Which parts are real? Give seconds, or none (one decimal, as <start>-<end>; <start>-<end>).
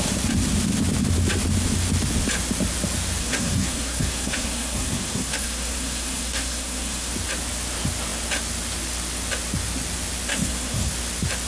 0.0-3.2; 7.1-10.3; 10.9-11.5